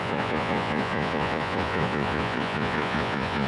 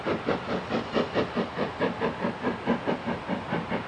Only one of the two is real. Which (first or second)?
second